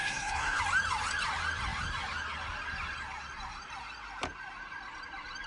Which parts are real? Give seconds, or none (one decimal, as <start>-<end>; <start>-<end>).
0.6-5.5